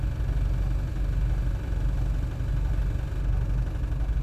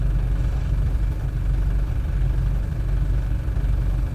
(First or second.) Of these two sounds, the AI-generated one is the second